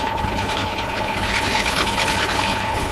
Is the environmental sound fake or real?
fake